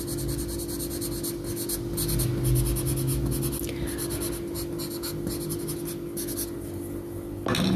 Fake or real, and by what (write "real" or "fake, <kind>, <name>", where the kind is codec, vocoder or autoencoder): real